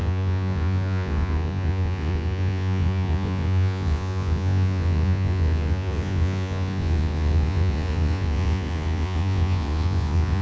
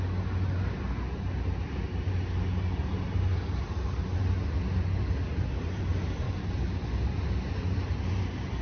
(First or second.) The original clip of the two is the second